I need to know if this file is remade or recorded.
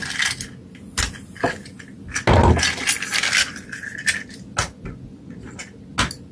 recorded